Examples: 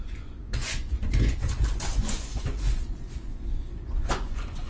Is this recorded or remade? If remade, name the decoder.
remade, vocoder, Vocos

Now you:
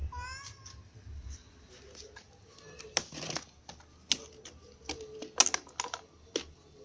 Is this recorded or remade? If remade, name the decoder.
recorded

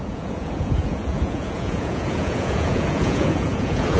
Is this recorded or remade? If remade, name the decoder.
remade, vocoder, Vocos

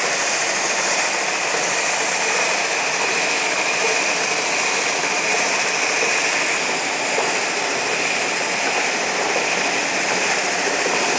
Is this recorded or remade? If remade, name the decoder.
recorded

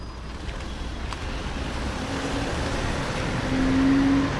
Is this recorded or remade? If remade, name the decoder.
recorded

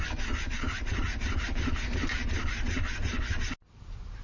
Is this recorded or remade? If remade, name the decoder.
recorded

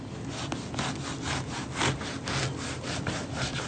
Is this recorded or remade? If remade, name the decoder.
recorded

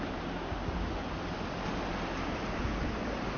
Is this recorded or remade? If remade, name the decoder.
recorded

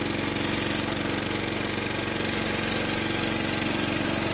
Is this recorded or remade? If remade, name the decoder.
recorded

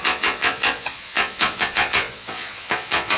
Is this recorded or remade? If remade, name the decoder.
remade, vocoder, Vocos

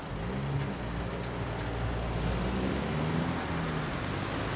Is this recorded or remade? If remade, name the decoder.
recorded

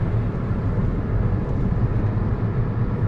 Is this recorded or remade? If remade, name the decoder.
recorded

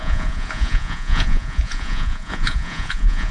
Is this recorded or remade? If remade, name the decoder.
remade, vocoder, Vocos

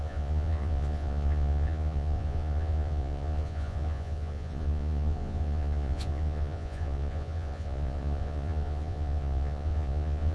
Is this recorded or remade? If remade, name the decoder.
remade, vocoder, Vocos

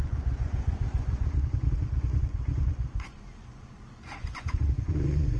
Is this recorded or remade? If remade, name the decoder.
remade, vocoder, Vocos